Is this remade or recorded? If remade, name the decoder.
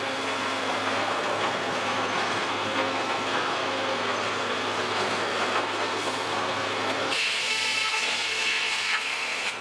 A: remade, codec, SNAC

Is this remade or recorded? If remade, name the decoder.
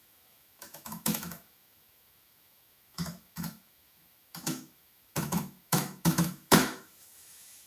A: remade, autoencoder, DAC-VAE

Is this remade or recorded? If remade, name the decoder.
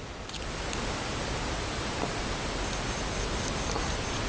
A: recorded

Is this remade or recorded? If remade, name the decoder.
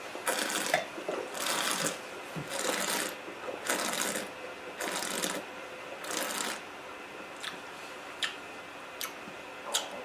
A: recorded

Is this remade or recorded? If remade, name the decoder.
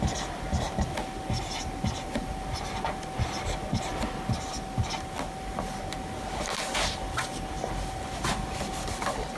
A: recorded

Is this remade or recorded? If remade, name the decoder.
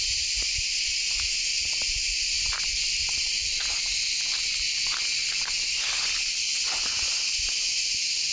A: recorded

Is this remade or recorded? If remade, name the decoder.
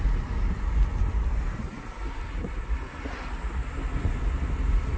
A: recorded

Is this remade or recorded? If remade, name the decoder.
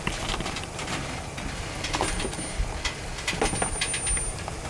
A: recorded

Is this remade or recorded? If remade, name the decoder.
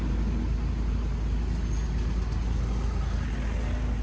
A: recorded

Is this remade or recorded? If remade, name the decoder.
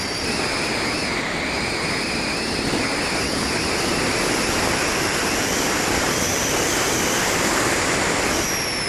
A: recorded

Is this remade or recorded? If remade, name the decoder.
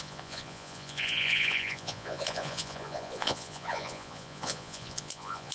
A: remade, vocoder, Vocos